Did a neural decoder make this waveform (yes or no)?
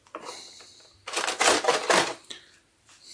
yes